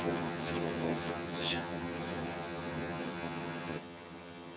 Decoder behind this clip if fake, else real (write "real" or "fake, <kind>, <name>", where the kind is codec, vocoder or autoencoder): fake, vocoder, HiFi-GAN